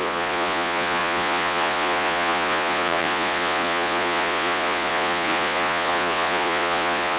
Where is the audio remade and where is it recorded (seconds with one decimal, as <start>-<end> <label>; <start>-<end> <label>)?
0.0-7.2 remade